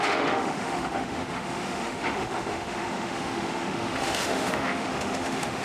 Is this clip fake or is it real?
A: fake